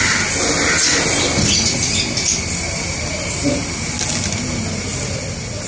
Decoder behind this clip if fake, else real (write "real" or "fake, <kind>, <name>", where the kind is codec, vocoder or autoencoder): real